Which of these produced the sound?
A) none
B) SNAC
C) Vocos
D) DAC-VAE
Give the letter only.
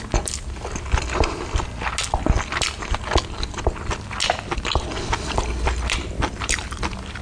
A